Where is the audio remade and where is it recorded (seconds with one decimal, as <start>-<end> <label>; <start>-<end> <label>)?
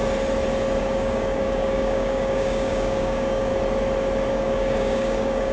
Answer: 0.0-0.8 recorded; 0.8-3.5 remade; 3.5-4.3 recorded; 4.3-5.5 remade